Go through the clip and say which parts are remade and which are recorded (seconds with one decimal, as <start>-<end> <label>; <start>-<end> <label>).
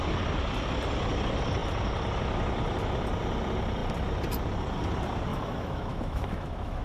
0.0-5.3 recorded; 5.3-6.8 remade